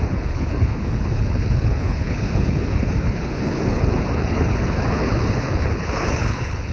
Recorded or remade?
remade